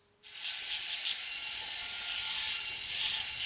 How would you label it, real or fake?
fake